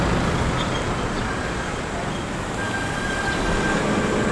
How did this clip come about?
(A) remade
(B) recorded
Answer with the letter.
B